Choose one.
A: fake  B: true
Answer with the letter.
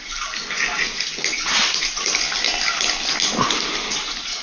B